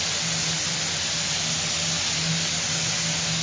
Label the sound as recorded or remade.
recorded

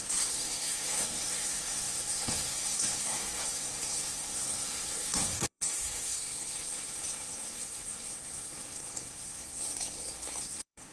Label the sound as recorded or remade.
remade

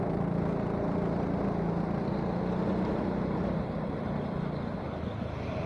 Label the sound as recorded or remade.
recorded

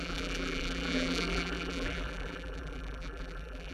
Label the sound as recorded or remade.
remade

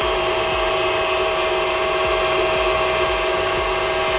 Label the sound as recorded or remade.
recorded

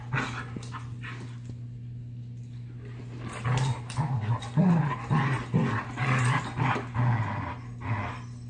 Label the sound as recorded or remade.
recorded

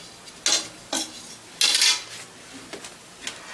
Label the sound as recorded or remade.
recorded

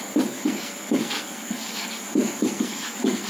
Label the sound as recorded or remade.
remade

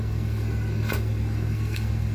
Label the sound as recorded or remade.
remade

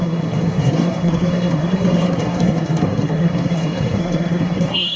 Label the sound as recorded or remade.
remade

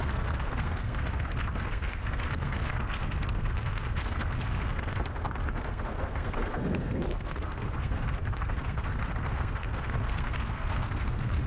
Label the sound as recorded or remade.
remade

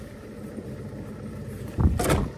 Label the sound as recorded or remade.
recorded